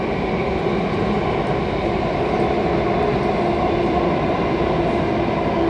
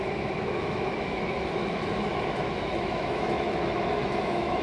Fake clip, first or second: second